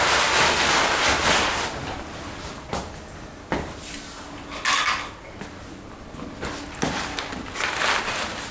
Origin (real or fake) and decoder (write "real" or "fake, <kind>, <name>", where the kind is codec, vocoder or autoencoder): real